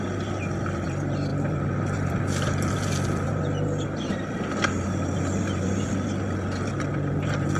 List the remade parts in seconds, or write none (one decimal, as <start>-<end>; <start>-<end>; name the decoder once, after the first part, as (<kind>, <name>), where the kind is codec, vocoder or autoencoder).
none